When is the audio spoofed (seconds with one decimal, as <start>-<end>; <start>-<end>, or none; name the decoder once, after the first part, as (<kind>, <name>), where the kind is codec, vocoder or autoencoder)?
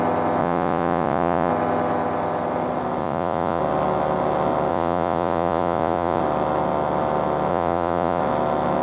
0.4-1.5 (vocoder, Vocos); 3.0-3.6; 4.7-6.2; 7.5-8.2